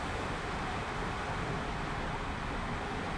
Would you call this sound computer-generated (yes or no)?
no